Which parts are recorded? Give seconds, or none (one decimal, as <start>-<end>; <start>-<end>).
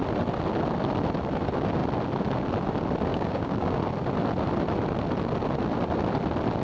0.0-3.1; 3.8-6.6